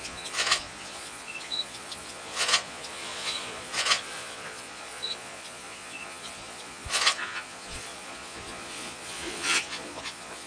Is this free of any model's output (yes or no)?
no